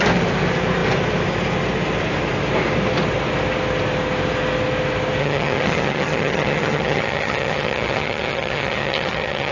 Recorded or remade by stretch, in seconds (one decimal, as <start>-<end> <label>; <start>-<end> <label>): 0.0-5.2 recorded; 5.2-9.5 remade